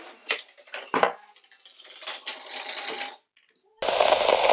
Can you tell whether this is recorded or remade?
recorded